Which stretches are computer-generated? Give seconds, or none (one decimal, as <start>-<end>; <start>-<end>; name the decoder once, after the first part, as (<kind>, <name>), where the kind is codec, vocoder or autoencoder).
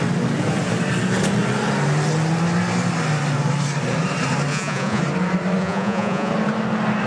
4.5-5.0 (vocoder, Vocos); 5.6-6.3